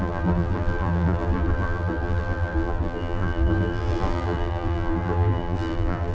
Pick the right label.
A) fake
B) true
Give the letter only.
A